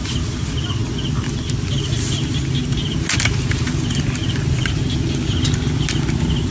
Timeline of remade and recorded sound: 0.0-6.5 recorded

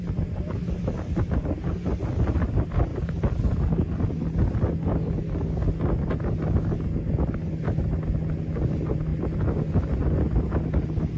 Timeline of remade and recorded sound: 0.0-11.2 recorded

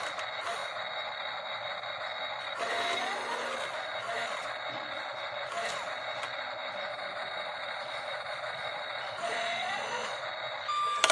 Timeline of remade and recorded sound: 0.0-6.9 recorded; 6.9-10.2 remade; 10.2-11.1 recorded

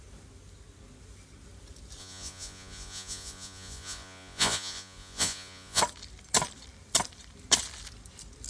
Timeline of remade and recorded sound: 0.0-2.0 recorded; 2.0-5.8 remade; 5.8-8.5 recorded

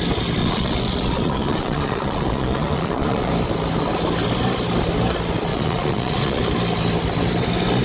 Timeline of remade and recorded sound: 0.0-0.4 recorded; 0.4-3.3 remade; 3.3-5.5 recorded; 5.5-6.4 remade; 6.4-7.8 recorded